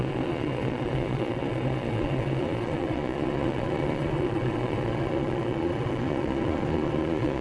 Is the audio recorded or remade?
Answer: remade